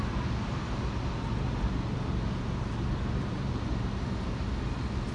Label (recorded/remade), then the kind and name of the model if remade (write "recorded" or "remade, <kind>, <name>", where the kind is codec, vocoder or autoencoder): recorded